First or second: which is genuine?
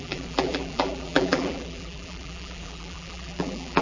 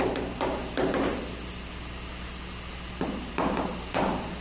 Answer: second